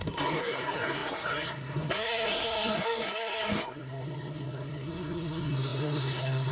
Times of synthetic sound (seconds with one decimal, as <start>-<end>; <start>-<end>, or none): 0.0-6.5